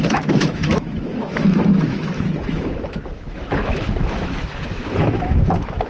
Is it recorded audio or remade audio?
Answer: remade